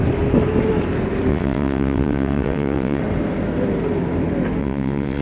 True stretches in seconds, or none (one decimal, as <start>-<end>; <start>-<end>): 0.0-1.3; 3.0-4.6